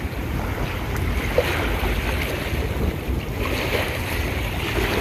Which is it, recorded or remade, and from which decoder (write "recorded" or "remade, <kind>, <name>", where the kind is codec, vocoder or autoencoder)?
recorded